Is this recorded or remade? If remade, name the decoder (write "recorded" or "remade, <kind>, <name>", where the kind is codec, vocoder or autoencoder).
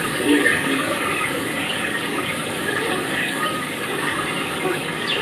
remade, codec, DAC